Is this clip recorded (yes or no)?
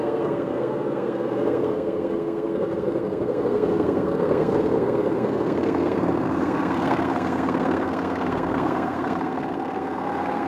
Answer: no